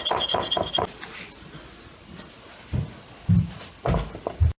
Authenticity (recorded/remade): recorded